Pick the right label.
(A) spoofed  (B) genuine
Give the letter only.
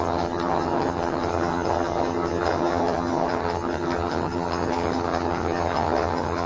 A